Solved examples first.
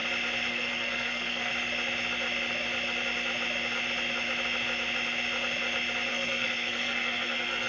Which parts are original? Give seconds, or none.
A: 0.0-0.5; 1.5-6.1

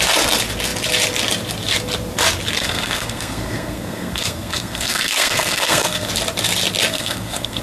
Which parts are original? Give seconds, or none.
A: 0.0-2.6; 6.1-6.9